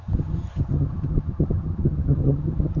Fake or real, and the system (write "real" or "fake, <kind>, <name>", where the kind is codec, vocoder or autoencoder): fake, vocoder, HiFi-GAN